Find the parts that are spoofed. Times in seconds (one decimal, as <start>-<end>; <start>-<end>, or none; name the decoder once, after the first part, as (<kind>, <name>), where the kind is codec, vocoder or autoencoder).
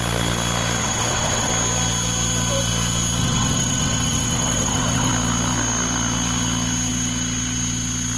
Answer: 0.8-1.5 (vocoder, WaveNeXt); 3.2-5.1